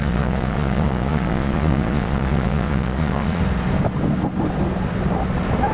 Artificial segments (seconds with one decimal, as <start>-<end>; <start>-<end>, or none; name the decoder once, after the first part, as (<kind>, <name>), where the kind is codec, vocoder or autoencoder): 0.0-3.4 (vocoder, Vocos)